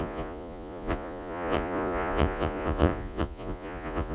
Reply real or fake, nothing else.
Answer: fake